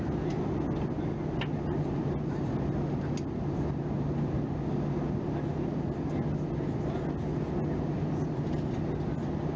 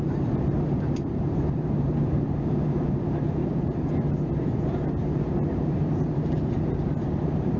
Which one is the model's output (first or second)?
second